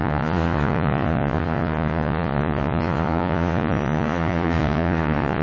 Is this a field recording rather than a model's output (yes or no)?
no